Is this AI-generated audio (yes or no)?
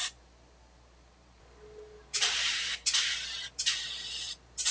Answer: no